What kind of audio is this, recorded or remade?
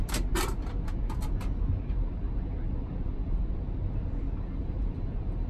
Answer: recorded